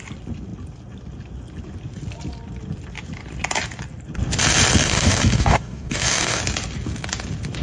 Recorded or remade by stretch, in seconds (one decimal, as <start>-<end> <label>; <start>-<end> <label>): 0.0-4.8 recorded; 4.8-6.4 remade; 6.4-7.6 recorded